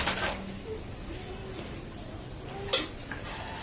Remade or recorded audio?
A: recorded